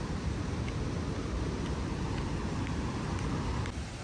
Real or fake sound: real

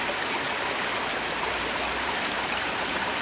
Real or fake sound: fake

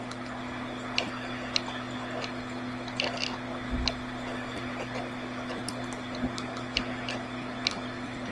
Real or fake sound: real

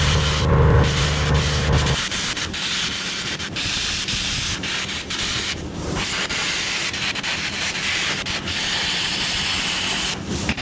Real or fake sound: fake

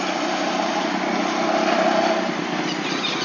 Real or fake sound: real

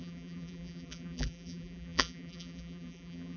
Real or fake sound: fake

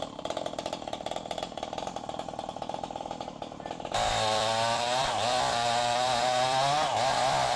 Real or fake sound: fake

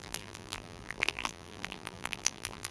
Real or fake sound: fake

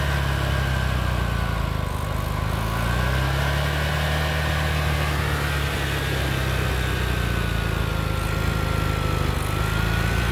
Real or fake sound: real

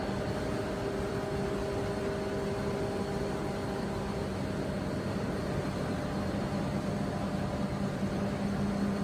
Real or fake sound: real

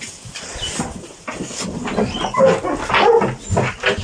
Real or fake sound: real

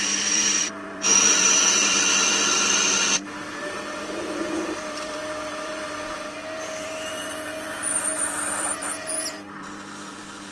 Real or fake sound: fake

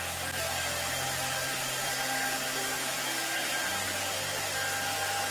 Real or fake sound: real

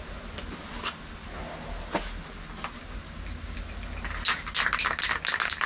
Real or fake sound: real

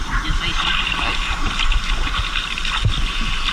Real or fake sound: real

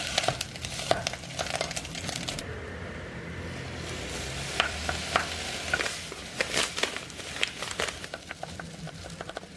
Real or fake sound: fake